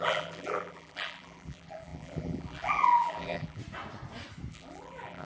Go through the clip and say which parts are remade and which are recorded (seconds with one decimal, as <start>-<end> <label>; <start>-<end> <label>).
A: 0.0-3.6 remade; 3.6-4.5 recorded; 4.5-5.2 remade